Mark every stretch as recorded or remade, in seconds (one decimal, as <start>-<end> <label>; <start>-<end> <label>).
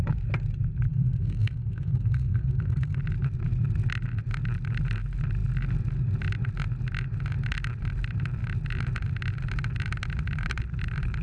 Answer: 0.0-0.9 recorded; 0.9-3.0 remade; 3.0-11.2 recorded